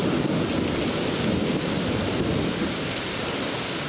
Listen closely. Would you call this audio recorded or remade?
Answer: recorded